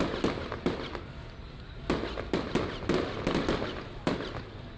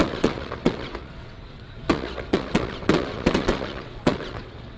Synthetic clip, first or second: second